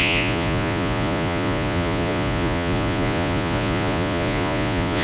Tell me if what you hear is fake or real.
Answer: fake